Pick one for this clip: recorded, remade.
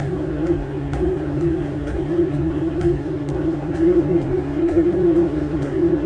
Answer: remade